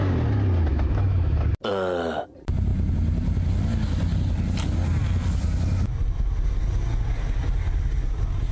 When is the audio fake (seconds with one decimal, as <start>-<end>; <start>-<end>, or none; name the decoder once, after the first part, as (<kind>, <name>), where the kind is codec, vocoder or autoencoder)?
0.7-1.3 (autoencoder, DAC-VAE)